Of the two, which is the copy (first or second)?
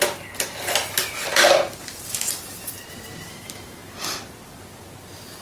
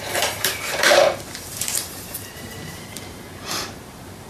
second